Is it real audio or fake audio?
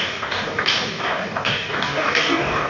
fake